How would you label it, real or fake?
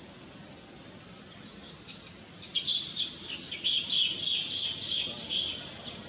real